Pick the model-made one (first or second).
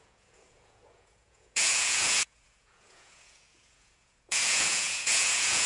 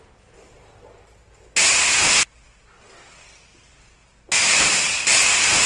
first